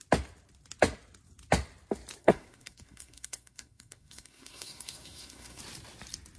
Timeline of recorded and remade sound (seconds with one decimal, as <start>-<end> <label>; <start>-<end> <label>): 0.0-2.2 recorded; 2.2-5.6 remade; 5.6-6.4 recorded